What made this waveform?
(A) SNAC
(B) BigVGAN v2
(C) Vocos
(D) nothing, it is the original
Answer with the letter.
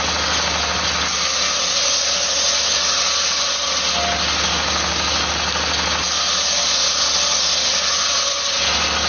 D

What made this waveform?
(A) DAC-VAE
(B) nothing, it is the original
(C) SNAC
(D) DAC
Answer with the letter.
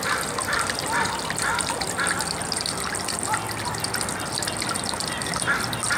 B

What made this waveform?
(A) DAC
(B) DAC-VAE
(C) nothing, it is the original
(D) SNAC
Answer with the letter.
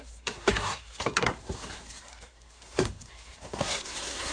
D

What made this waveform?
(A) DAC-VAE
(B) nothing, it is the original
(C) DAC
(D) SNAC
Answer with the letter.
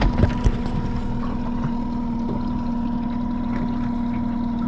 B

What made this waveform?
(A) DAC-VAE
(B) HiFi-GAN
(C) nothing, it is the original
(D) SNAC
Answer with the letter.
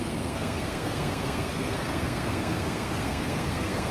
D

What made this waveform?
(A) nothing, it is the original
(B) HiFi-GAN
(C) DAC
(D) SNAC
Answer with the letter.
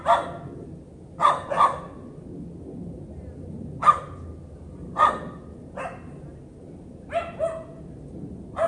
A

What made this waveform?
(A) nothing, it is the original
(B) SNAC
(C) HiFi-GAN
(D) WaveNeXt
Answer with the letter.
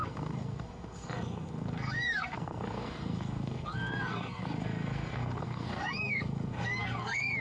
B